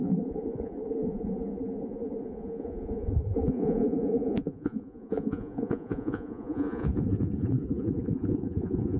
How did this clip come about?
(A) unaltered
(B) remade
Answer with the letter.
B